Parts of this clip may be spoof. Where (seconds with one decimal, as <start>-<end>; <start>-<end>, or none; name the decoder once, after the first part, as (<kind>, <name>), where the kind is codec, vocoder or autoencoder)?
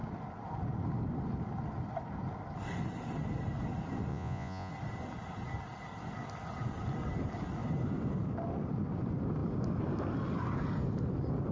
4.1-4.7 (vocoder, Vocos)